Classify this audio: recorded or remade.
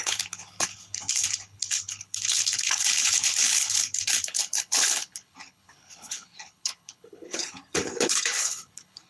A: remade